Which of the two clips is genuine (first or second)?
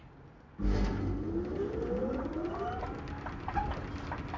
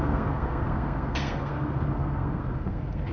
first